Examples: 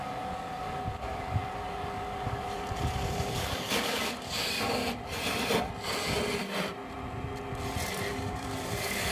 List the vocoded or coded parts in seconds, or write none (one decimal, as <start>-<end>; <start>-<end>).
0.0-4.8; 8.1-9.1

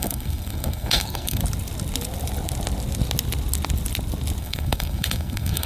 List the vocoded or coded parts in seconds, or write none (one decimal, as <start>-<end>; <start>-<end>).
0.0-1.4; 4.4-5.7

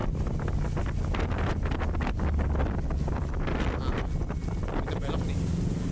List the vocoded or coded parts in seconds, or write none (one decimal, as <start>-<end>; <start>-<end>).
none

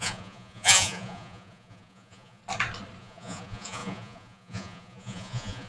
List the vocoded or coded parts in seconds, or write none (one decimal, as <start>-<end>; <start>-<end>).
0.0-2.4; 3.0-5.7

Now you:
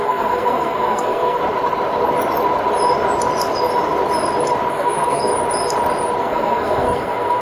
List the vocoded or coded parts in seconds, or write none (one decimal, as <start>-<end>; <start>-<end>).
0.0-1.4; 4.7-5.3; 6.2-7.4

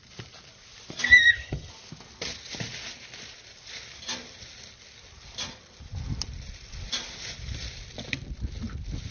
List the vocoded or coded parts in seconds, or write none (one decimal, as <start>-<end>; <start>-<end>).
1.1-1.7

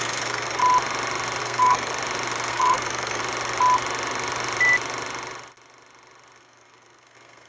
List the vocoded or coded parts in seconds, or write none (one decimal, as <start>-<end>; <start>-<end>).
0.0-0.6; 1.4-1.9; 2.5-3.2; 6.4-7.5

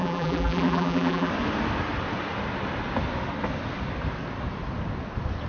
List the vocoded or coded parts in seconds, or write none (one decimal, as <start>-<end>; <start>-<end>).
0.0-1.3